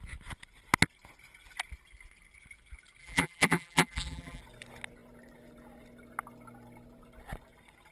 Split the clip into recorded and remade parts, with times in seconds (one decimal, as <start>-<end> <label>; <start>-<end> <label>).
0.0-3.0 recorded; 3.0-4.4 remade; 4.4-7.9 recorded